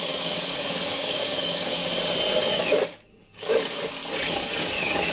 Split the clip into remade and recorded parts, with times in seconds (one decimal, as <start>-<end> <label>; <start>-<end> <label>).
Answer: 0.0-1.8 remade; 1.8-2.4 recorded; 2.4-4.0 remade; 4.0-4.6 recorded; 4.6-5.1 remade